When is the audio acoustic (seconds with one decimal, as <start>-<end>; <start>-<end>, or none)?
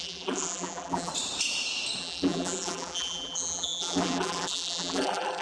1.1-2.0